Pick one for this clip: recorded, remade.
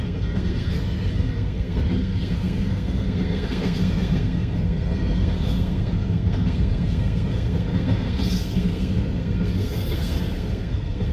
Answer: remade